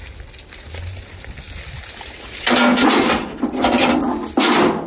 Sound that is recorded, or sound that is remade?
recorded